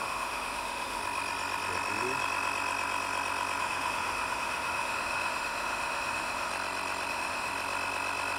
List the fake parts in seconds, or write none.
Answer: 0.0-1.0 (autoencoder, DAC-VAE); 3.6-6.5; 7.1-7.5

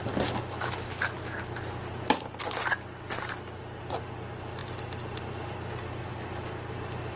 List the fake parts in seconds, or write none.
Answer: none

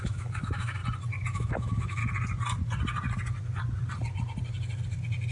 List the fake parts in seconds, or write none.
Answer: 0.0-0.8 (autoencoder, DAC-VAE); 1.3-2.0